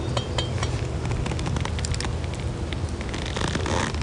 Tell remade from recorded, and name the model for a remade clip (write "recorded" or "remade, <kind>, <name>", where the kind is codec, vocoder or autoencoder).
recorded